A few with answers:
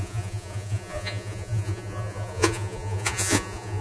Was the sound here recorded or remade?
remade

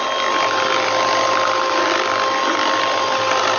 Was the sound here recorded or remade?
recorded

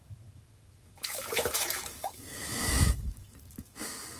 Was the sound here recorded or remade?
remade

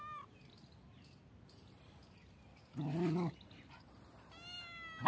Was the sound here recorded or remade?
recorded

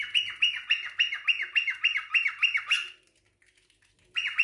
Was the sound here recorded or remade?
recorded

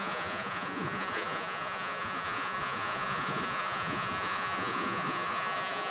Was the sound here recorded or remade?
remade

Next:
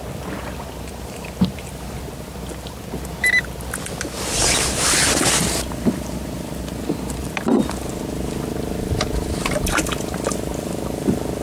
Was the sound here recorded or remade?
recorded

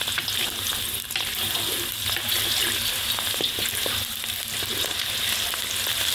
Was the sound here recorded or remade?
remade